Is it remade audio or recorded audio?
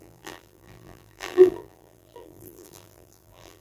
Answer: remade